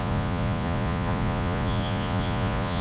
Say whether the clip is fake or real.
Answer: fake